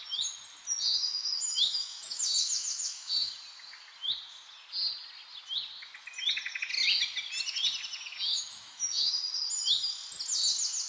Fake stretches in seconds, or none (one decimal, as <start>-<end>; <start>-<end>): 1.1-3.3; 8.3-9.1